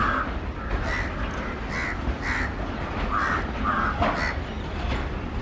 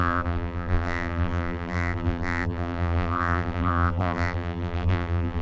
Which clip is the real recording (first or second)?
first